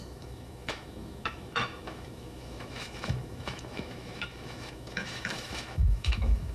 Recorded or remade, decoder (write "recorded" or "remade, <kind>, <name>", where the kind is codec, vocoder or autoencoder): remade, autoencoder, DAC-VAE